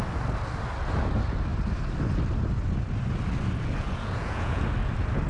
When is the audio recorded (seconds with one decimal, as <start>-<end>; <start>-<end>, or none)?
0.0-3.6; 4.6-5.3